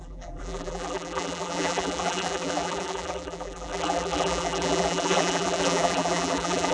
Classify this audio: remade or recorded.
remade